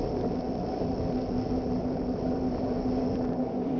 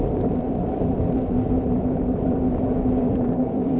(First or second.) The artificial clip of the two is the second